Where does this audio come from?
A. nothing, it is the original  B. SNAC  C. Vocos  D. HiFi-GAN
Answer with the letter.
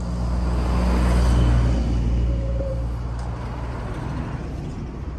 A